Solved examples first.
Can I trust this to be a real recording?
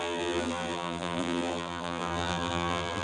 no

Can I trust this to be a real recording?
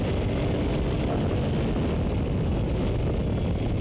yes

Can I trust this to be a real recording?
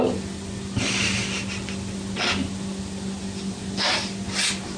yes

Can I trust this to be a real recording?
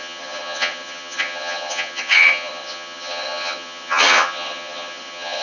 no